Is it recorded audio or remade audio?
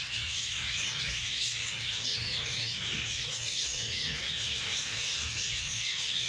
remade